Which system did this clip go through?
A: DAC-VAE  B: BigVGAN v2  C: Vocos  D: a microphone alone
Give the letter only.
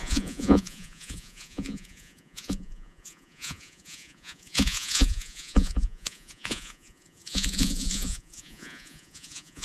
C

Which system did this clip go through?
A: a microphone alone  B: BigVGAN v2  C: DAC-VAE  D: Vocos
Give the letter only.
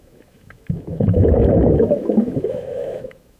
C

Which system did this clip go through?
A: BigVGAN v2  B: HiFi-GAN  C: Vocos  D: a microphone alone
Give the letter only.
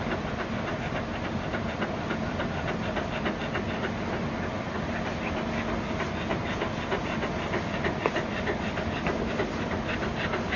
D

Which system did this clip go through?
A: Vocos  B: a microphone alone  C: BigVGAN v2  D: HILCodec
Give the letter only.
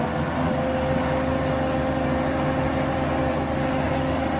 B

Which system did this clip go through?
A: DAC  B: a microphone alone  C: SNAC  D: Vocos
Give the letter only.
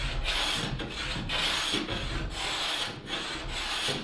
B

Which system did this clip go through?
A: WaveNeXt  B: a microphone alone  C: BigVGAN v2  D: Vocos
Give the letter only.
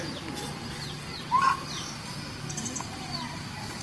B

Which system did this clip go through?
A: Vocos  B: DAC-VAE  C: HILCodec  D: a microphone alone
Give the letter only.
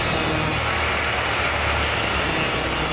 D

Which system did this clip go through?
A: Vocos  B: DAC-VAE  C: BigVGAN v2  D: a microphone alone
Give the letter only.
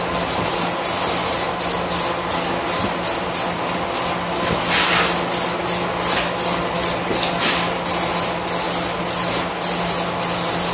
D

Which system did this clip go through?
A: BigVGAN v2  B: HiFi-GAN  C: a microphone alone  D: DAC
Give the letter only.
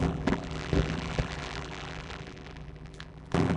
A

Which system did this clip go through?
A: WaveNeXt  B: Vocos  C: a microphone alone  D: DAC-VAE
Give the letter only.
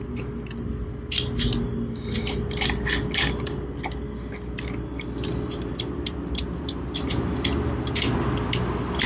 C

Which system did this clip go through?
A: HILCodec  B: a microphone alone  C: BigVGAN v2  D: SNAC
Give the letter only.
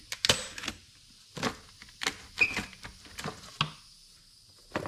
B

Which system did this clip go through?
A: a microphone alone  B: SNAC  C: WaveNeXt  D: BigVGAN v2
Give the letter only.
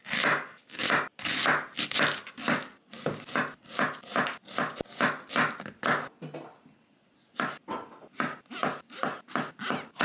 A